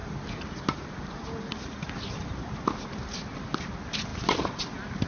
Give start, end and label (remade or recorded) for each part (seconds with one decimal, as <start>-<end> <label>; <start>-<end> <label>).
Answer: 0.0-5.1 recorded